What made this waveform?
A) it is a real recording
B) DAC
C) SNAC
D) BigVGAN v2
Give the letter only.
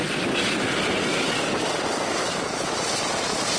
A